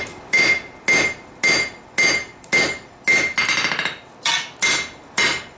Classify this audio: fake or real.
real